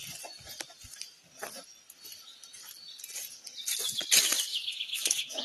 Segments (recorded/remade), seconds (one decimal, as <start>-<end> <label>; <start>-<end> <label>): 0.0-4.5 recorded; 4.5-5.4 remade

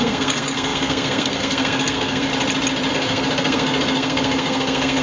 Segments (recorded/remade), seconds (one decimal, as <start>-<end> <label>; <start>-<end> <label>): 0.0-2.3 remade; 2.3-2.9 recorded; 2.9-5.0 remade

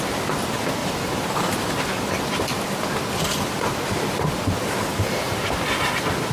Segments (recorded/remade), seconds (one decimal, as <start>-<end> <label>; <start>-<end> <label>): 0.0-0.8 recorded; 0.8-1.8 remade; 1.8-4.9 recorded; 4.9-5.6 remade; 5.6-6.3 recorded